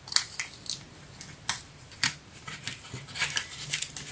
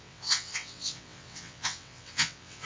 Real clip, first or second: first